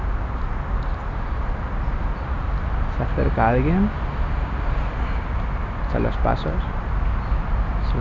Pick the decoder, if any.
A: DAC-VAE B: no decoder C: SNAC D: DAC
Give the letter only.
B